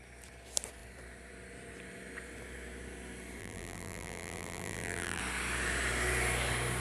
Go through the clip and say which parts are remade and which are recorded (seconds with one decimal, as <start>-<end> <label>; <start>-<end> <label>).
0.0-3.4 recorded; 3.4-5.2 remade; 5.2-6.8 recorded